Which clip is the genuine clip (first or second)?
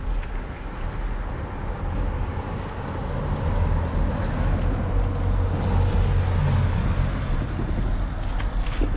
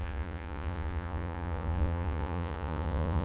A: first